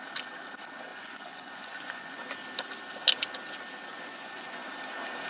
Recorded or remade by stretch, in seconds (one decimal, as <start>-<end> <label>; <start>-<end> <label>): 0.0-0.9 recorded; 0.9-2.2 remade; 2.2-3.9 recorded; 3.9-4.7 remade; 4.7-5.3 recorded